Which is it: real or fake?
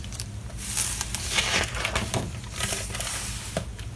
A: real